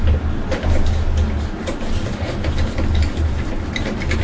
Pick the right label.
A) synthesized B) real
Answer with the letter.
B